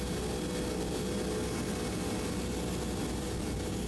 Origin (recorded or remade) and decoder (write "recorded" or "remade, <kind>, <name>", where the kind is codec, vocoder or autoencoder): recorded